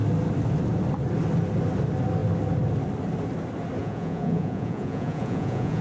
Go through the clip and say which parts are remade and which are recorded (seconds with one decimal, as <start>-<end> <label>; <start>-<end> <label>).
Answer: 0.0-3.8 recorded; 3.8-5.8 remade